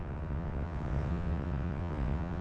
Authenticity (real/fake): fake